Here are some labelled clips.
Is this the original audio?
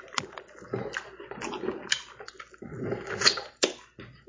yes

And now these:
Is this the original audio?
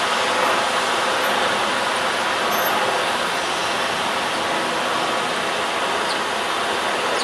yes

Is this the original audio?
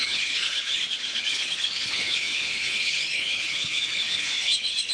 no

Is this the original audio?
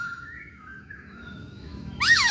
no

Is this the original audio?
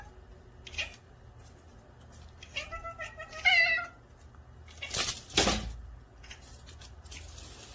yes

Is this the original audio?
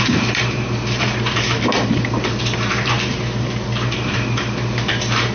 no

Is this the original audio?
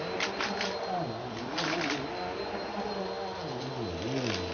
yes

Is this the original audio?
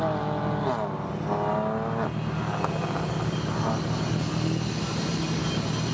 yes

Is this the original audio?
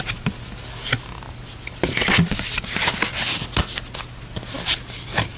yes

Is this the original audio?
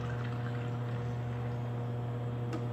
yes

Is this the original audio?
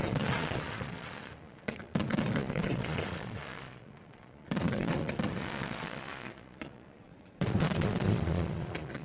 no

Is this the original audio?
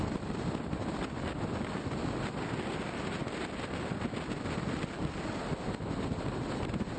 no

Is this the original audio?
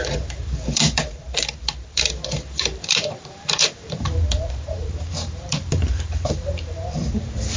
no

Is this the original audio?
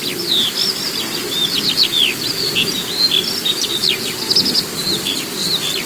yes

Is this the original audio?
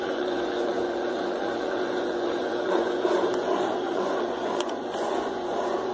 no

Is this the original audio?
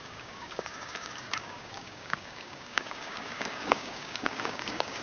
no